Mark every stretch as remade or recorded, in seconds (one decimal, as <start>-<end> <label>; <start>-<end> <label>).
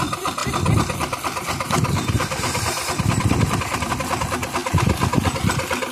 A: 0.0-0.4 recorded; 0.4-3.9 remade; 3.9-4.6 recorded; 4.6-5.3 remade; 5.3-5.9 recorded